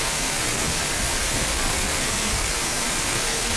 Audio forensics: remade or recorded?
remade